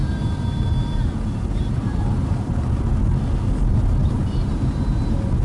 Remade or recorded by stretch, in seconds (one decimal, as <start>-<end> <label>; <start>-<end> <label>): 0.0-2.5 remade; 2.5-4.0 recorded; 4.0-5.0 remade; 5.0-5.4 recorded